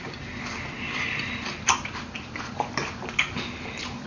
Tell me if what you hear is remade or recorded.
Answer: recorded